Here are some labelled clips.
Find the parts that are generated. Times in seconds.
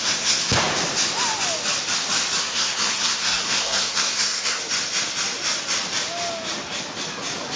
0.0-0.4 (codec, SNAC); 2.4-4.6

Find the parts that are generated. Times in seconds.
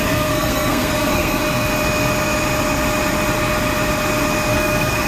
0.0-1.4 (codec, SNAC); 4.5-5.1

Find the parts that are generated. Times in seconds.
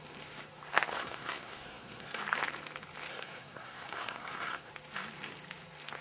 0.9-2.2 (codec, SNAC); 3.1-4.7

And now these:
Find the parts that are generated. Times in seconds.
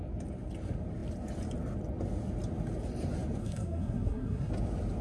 3.4-4.5 (codec, SNAC)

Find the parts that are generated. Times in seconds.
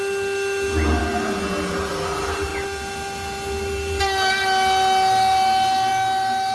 none